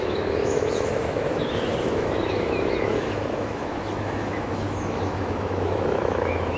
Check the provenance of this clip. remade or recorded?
remade